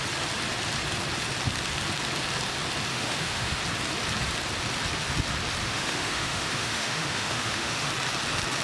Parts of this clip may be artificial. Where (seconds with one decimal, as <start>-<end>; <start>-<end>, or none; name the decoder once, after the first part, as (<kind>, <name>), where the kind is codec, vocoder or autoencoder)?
2.9-3.6 (autoencoder, DAC-VAE); 5.6-7.9